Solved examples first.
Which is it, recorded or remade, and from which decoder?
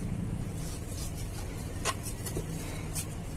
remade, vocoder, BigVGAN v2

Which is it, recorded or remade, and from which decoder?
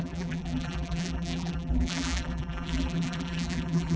remade, vocoder, BigVGAN v2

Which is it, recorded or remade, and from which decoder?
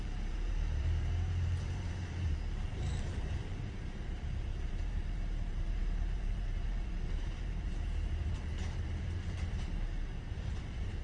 remade, vocoder, BigVGAN v2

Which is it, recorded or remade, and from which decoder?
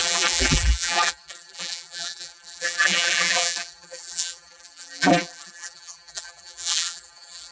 remade, vocoder, BigVGAN v2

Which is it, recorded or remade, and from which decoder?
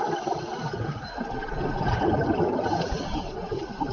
remade, vocoder, BigVGAN v2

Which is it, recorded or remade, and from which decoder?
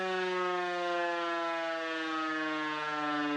recorded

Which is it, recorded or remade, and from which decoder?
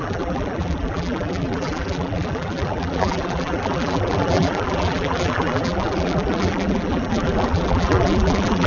remade, vocoder, BigVGAN v2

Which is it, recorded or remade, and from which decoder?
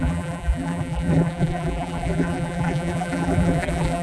remade, vocoder, BigVGAN v2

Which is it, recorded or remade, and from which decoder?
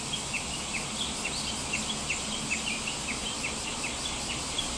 recorded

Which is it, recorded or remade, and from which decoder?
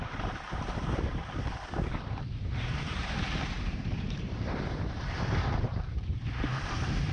remade, vocoder, BigVGAN v2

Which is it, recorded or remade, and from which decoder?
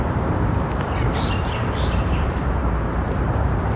remade, vocoder, BigVGAN v2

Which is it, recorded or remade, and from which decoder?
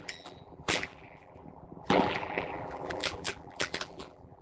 remade, vocoder, BigVGAN v2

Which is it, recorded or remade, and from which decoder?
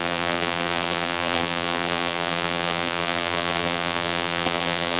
remade, vocoder, BigVGAN v2